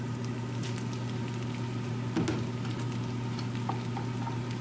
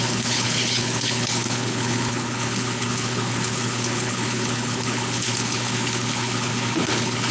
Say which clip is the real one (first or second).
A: first